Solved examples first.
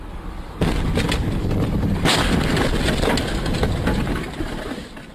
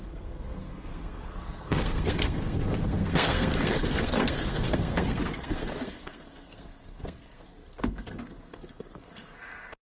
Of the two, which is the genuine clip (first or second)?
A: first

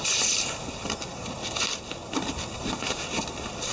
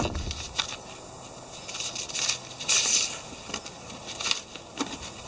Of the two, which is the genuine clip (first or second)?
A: second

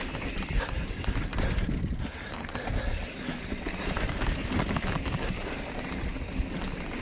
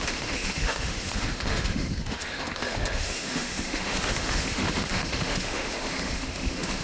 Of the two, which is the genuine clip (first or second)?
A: first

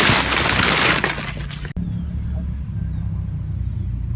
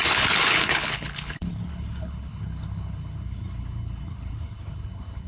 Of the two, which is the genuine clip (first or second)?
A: first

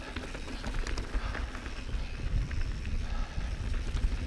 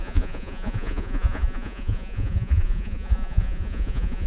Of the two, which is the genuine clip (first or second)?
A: first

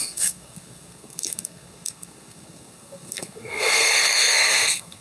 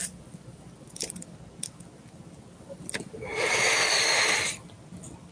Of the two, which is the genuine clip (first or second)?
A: second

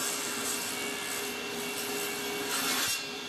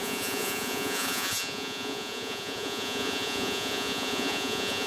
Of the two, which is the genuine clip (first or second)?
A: first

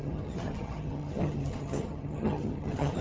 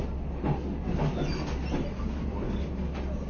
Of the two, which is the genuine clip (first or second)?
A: second